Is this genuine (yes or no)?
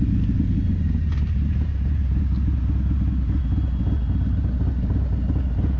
yes